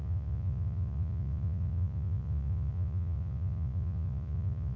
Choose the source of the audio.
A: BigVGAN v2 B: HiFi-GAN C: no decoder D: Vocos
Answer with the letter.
D